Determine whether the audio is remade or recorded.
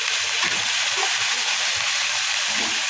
recorded